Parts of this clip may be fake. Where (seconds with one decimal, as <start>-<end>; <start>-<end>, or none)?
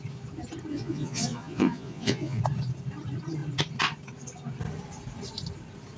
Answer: 0.7-2.4